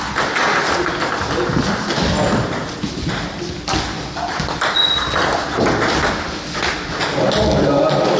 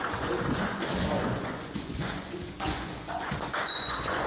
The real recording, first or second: first